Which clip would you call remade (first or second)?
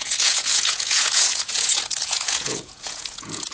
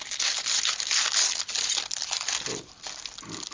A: first